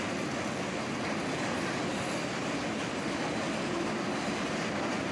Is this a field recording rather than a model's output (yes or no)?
yes